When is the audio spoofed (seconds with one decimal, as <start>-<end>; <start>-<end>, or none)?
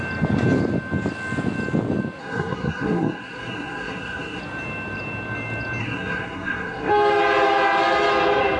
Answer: 2.2-4.4; 5.8-6.9